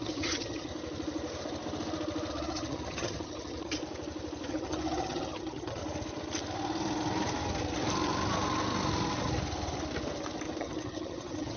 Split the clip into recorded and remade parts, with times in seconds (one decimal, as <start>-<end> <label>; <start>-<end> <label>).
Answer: 0.0-0.7 remade; 0.7-2.3 recorded; 2.3-3.8 remade; 3.8-4.5 recorded; 4.5-5.8 remade; 5.8-10.6 recorded; 10.6-11.6 remade